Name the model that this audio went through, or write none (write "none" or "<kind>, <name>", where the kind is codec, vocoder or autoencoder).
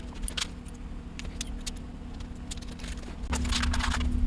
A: none